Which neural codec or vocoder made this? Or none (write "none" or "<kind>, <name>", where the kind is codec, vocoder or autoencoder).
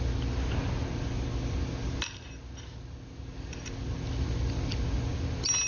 none